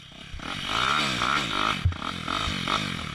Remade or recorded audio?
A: recorded